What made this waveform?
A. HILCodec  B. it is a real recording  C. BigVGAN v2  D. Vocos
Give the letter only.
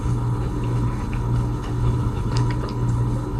A